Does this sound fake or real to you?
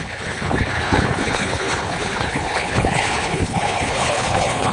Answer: fake